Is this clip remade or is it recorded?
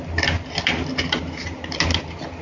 recorded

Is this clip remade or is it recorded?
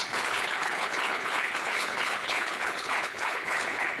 remade